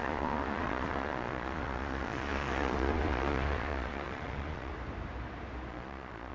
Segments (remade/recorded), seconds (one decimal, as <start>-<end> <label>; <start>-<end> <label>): 0.0-4.7 remade; 4.7-5.7 recorded; 5.7-6.3 remade